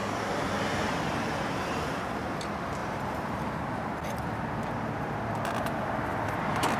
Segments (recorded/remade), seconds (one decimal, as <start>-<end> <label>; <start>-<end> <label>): 0.0-2.8 recorded; 2.8-3.9 remade; 3.9-6.8 recorded

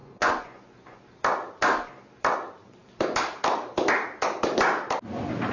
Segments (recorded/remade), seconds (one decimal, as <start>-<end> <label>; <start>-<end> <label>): 0.0-1.0 remade; 1.0-5.5 recorded

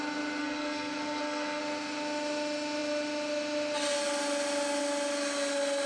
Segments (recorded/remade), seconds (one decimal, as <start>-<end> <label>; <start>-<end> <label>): 0.0-0.4 recorded; 0.4-1.6 remade; 1.6-5.9 recorded

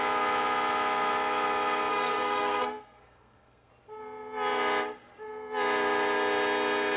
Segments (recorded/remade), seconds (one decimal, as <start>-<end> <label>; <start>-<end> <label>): 0.0-1.9 recorded; 1.9-3.7 remade; 3.7-7.0 recorded

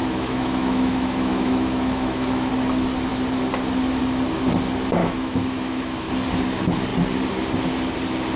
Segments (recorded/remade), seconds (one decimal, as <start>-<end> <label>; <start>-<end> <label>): 0.0-2.5 remade; 2.5-5.0 recorded; 5.0-6.1 remade; 6.1-8.4 recorded

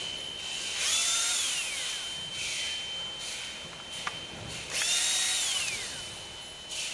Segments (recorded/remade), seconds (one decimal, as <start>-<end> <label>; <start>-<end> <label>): 0.0-1.0 recorded; 1.0-1.7 remade; 1.7-6.9 recorded